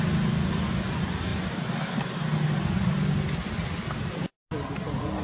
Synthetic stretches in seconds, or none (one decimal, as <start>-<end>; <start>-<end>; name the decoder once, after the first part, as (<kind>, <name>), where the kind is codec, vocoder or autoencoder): none